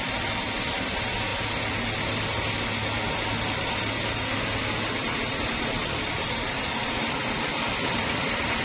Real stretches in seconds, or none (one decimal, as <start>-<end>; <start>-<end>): 1.3-5.6